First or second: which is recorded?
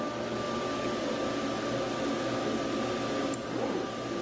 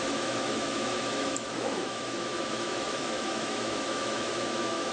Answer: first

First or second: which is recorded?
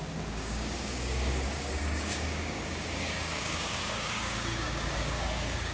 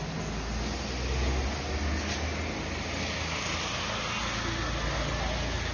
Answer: second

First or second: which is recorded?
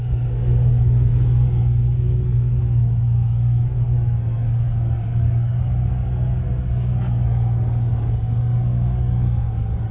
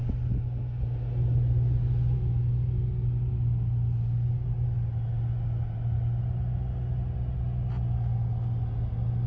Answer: second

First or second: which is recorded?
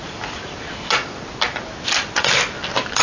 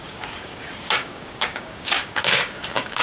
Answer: first